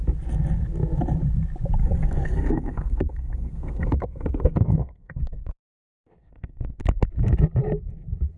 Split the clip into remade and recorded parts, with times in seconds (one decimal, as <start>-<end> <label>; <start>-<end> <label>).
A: 0.0-1.8 recorded; 1.8-6.8 remade; 6.8-8.4 recorded